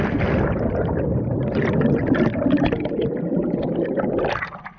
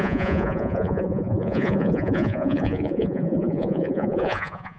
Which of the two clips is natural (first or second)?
first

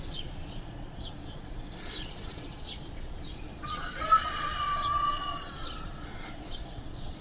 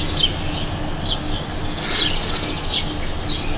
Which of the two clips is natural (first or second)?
second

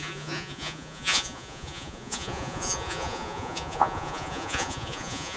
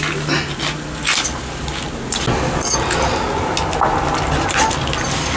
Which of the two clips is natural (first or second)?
second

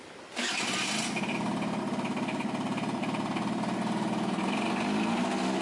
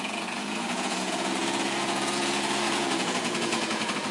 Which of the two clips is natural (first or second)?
first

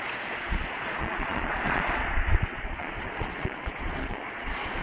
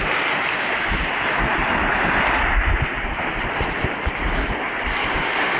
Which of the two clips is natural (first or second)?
second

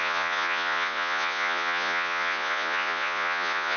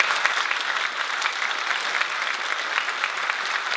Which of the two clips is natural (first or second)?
second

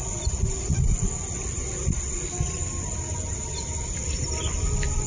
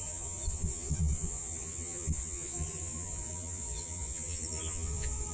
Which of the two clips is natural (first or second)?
first